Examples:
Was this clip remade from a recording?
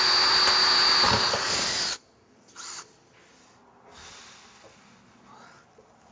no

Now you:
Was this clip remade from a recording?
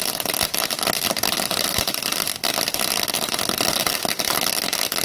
no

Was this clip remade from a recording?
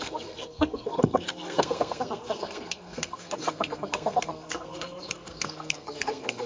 yes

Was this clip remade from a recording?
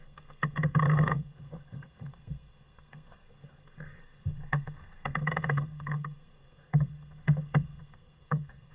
yes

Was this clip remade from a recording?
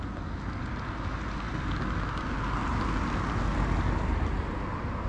no